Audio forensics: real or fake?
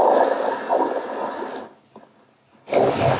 real